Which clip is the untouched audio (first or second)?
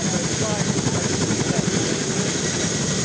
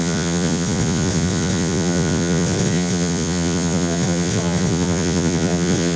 first